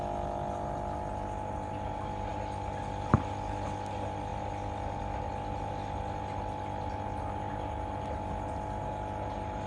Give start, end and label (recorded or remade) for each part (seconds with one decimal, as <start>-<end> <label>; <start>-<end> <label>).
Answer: 0.0-9.7 recorded